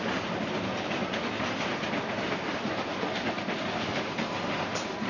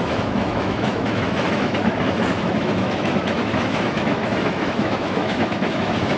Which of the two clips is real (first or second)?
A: first